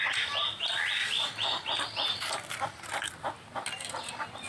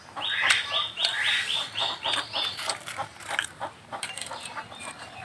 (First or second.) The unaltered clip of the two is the first